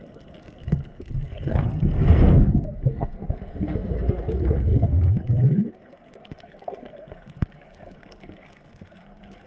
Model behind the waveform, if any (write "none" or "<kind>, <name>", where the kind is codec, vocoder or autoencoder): codec, SNAC